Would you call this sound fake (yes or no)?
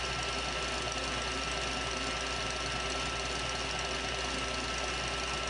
no